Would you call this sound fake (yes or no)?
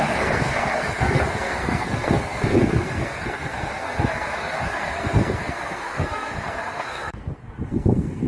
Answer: yes